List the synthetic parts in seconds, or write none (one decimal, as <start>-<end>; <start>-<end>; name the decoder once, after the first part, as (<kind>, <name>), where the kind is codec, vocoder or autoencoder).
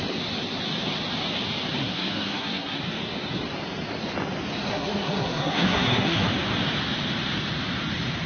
1.8-2.8 (codec, SNAC); 4.7-6.3